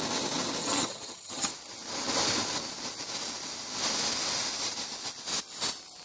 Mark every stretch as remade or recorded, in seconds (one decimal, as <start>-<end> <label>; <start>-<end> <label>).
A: 0.0-0.6 recorded; 0.6-1.5 remade; 1.5-6.0 recorded